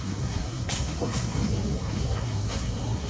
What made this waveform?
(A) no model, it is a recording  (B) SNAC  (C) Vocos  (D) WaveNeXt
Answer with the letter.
B